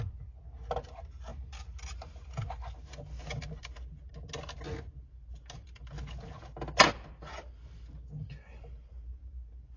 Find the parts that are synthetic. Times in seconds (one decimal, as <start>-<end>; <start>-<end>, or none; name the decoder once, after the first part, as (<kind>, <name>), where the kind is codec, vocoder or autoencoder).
none